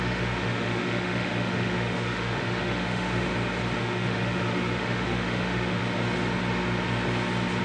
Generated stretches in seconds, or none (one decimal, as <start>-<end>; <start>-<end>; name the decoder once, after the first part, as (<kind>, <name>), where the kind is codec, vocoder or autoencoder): 0.0-3.3 (autoencoder, DAC-VAE); 3.8-5.8